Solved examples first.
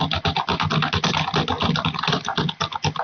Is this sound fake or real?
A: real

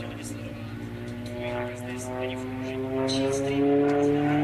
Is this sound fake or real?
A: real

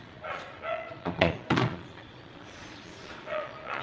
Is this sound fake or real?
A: fake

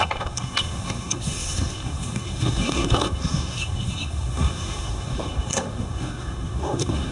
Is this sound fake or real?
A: fake